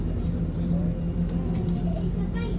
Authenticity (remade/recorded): recorded